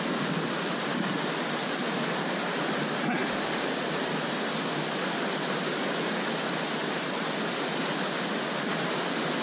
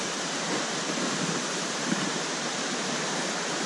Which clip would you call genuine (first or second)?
first